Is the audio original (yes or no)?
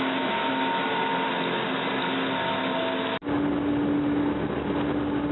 yes